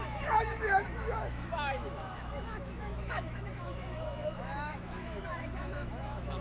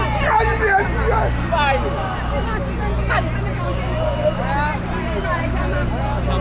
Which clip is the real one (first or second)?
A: second